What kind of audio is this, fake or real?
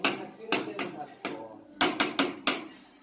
real